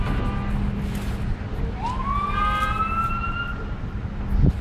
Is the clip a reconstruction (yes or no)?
no